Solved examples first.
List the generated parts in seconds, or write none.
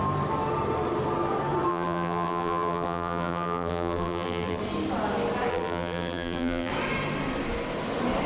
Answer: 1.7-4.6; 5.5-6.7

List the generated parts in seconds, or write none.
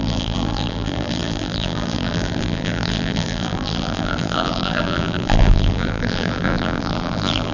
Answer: 0.0-7.5